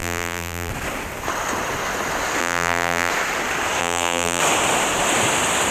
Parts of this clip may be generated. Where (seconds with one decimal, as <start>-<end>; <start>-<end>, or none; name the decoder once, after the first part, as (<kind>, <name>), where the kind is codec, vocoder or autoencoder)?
0.0-0.7 (vocoder, BigVGAN v2); 2.4-3.1; 3.8-4.4